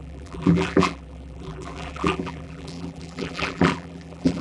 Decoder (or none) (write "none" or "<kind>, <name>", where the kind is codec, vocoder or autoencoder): vocoder, BigVGAN v2